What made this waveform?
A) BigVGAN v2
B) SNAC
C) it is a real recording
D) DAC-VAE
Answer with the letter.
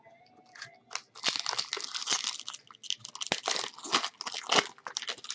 C